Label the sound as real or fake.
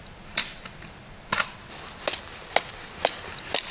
real